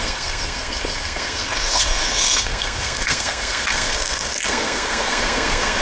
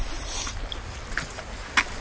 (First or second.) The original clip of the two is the second